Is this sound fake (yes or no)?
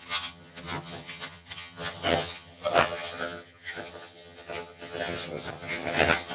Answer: yes